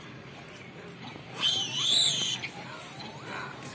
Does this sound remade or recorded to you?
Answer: recorded